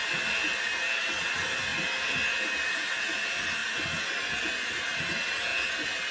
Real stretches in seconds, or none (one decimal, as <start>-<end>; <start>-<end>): 0.0-6.1